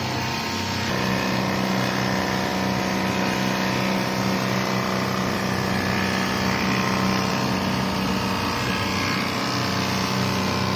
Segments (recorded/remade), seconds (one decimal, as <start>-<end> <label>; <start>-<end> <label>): 0.0-10.8 recorded